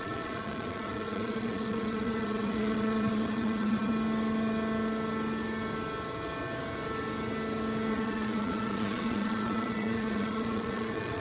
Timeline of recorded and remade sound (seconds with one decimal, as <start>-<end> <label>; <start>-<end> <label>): 0.0-3.9 remade; 3.9-7.9 recorded; 7.9-11.2 remade

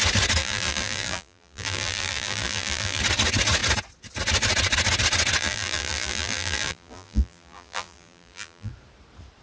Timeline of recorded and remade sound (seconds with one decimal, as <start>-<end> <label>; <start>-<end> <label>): 0.0-0.4 recorded; 0.4-3.0 remade; 3.0-5.4 recorded; 5.4-8.7 remade; 8.7-9.4 recorded